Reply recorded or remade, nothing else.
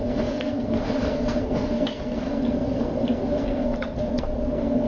remade